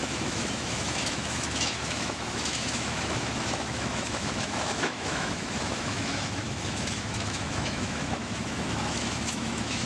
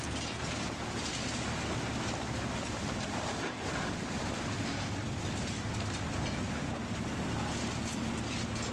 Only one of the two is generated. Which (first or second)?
first